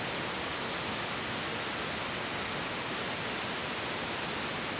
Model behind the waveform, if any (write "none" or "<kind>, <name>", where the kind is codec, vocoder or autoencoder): none